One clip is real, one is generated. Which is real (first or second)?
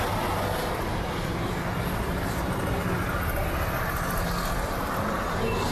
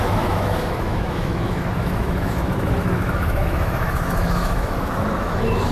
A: first